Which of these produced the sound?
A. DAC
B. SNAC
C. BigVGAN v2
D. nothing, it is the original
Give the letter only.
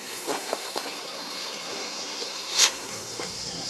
B